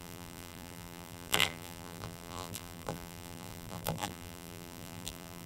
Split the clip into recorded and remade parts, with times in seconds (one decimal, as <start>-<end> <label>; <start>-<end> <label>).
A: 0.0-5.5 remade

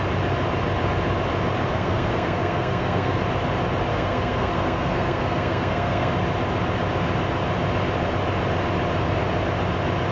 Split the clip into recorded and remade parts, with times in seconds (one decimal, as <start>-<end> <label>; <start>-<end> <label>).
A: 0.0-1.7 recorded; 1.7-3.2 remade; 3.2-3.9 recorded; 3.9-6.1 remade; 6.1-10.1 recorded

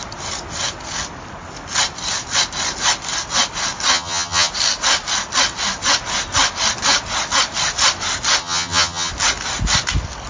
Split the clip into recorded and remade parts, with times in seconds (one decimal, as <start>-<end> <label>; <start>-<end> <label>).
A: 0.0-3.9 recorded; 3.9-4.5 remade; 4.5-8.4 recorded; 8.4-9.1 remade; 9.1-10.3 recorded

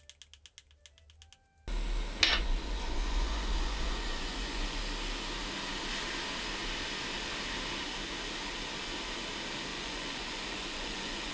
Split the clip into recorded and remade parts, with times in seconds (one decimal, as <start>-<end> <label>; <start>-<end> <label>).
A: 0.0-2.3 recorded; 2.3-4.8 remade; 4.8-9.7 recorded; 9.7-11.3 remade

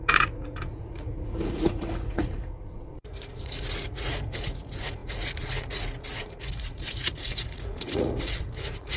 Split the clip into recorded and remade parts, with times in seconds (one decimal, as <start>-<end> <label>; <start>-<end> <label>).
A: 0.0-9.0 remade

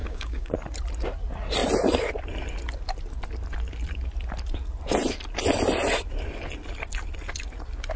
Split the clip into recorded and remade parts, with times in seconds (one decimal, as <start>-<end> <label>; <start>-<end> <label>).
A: 0.0-0.5 remade; 0.5-8.0 recorded

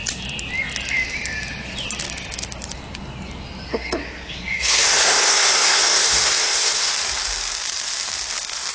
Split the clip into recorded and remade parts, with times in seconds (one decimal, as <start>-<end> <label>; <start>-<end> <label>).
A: 0.0-3.7 recorded; 3.7-6.9 remade; 6.9-8.7 recorded